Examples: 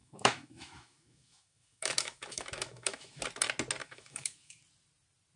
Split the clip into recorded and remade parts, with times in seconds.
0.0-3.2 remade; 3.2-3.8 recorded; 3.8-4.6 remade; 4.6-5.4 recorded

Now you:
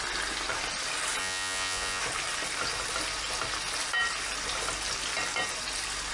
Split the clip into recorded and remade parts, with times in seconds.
0.0-1.2 recorded; 1.2-2.0 remade; 2.0-6.1 recorded

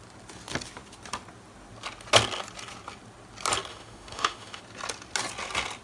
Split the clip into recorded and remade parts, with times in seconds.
0.0-3.7 recorded; 3.7-4.6 remade; 4.6-5.8 recorded

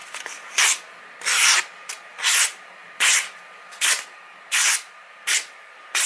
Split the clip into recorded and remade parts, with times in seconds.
0.0-1.3 remade; 1.3-2.1 recorded; 2.1-6.1 remade

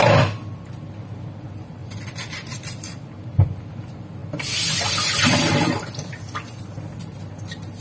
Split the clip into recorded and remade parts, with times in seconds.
0.0-1.8 recorded; 1.8-3.6 remade; 3.6-4.2 recorded; 4.2-6.1 remade; 6.1-7.8 recorded

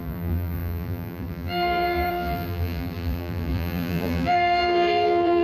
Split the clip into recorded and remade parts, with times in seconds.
0.0-5.4 remade